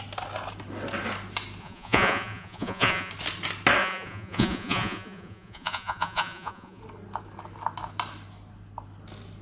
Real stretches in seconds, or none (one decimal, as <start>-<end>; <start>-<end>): 0.0-1.6; 3.1-3.8; 6.8-9.4